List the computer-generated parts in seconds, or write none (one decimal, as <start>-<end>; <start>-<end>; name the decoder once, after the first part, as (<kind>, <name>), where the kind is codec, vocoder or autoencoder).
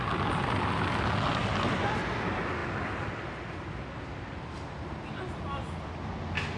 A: none